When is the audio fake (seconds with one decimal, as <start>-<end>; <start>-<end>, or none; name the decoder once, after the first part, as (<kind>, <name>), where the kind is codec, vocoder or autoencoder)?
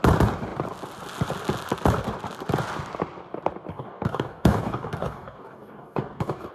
3.7-6.5 (codec, DAC)